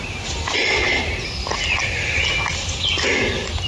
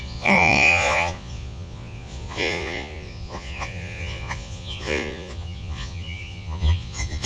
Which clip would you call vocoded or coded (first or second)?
second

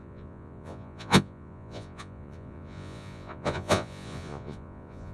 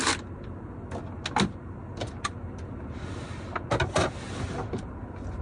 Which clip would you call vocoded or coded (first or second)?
first